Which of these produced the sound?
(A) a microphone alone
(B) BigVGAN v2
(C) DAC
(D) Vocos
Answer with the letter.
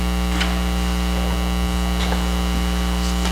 A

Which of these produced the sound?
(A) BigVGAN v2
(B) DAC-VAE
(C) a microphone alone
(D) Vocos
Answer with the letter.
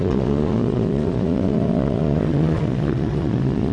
D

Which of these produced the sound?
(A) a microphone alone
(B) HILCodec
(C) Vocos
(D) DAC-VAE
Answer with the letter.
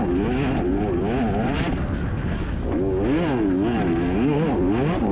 A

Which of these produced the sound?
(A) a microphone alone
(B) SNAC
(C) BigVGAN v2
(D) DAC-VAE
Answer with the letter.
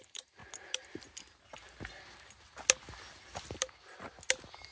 A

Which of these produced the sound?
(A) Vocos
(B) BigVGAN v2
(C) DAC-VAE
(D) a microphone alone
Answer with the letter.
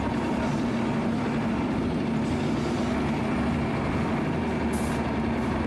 D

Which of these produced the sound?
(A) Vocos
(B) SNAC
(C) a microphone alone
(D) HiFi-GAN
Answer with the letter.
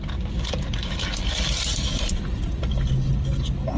C